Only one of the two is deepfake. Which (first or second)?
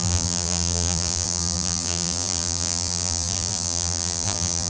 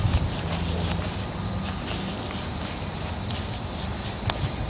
first